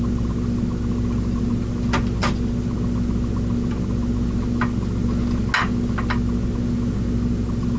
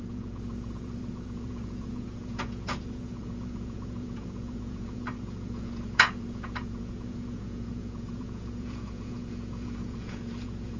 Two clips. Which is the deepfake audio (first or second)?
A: second